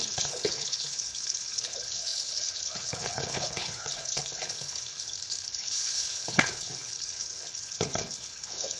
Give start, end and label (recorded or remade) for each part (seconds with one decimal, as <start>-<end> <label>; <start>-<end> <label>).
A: 0.0-8.8 remade